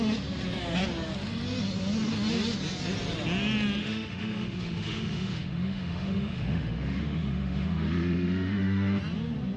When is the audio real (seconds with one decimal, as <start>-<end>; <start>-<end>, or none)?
0.0-3.8; 9.0-9.6